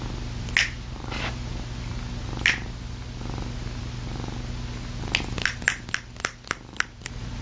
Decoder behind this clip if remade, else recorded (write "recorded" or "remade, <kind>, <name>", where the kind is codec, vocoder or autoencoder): recorded